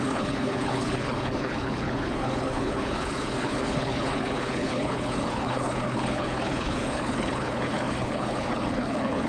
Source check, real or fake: fake